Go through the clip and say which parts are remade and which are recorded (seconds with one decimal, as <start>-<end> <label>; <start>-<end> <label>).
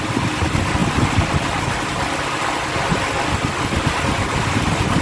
0.0-5.0 recorded